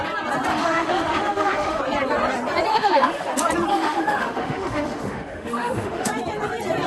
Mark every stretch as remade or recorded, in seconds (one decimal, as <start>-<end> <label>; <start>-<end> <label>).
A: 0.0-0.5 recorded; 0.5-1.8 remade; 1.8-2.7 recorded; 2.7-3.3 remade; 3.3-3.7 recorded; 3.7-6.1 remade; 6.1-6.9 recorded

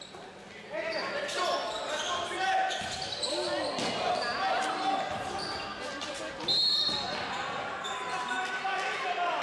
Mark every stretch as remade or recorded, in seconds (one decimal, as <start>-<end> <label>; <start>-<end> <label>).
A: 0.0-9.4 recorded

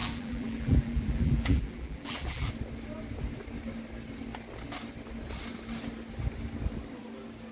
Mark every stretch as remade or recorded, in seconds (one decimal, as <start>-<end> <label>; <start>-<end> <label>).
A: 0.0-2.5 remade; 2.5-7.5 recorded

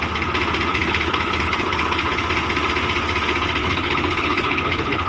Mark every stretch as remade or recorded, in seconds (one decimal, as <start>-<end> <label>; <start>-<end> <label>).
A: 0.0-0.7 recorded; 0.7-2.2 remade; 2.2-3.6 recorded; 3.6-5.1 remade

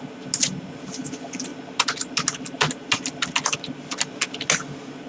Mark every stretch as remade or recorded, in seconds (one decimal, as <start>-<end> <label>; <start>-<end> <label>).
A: 0.0-5.1 recorded